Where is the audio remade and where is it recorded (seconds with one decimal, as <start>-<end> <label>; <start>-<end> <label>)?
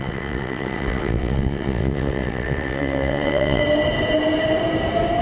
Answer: 0.0-3.6 remade; 3.6-5.2 recorded